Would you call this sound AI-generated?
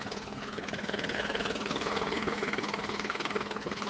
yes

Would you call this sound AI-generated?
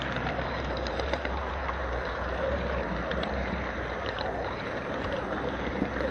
yes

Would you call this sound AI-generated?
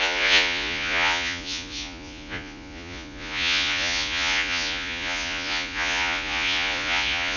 yes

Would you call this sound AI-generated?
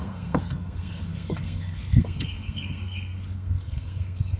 yes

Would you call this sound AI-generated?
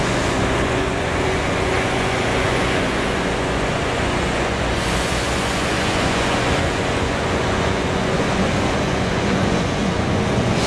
yes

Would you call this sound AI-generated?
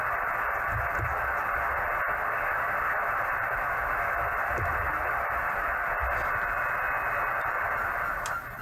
no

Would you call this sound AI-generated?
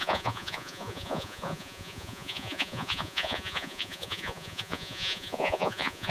yes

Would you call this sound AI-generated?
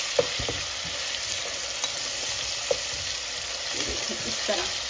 no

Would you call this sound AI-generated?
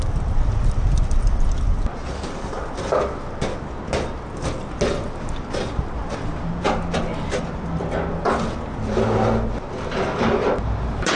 no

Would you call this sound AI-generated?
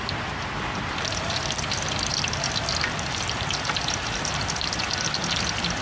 no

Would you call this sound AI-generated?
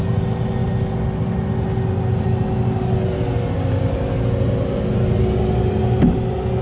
no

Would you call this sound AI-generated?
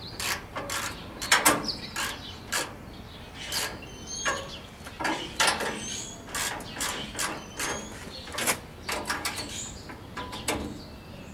no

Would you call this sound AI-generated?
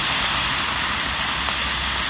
no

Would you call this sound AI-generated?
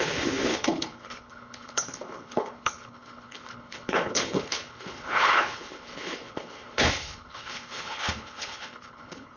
yes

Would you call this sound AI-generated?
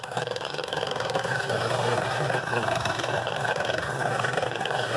yes